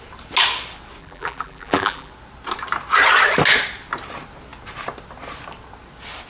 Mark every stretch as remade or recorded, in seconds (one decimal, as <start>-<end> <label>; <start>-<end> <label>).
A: 0.0-1.0 recorded; 1.0-2.1 remade; 2.1-6.3 recorded